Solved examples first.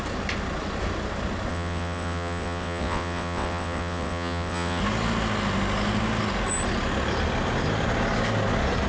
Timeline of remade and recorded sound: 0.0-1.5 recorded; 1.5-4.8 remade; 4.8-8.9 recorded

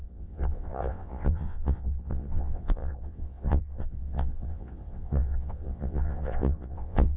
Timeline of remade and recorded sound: 0.0-7.2 remade

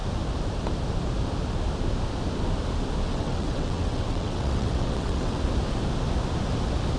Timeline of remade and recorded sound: 0.0-3.1 recorded; 3.1-5.4 remade; 5.4-7.0 recorded